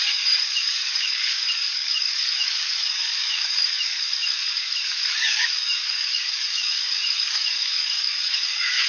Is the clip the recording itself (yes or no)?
no